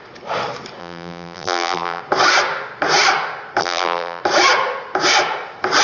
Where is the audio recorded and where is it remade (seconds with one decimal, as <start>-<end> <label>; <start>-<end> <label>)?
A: 0.0-0.8 recorded; 0.8-2.0 remade; 2.0-3.6 recorded; 3.6-4.2 remade; 4.2-5.8 recorded